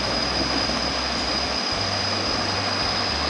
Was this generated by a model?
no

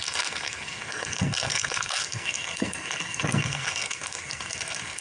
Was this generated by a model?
yes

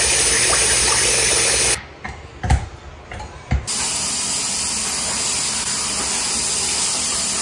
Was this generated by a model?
no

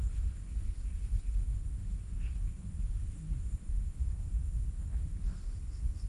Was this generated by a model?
yes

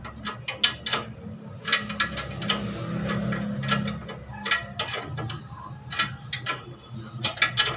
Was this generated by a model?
no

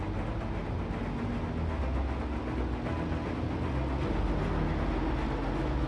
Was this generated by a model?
no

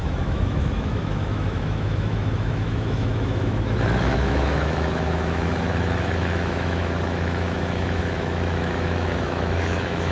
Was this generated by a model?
yes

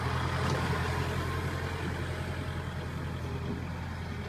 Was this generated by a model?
no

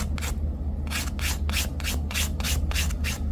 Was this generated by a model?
no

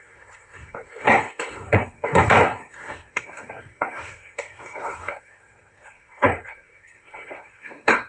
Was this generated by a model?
yes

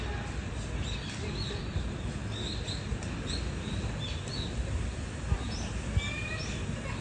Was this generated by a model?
no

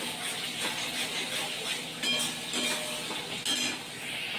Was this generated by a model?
no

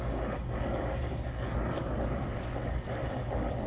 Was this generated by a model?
yes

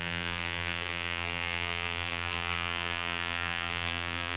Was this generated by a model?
yes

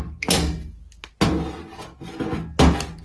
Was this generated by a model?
no